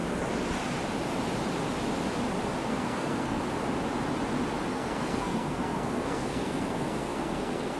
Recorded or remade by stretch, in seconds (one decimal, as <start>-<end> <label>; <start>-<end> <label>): 0.0-2.6 recorded; 2.6-3.4 remade; 3.4-4.7 recorded; 4.7-7.8 remade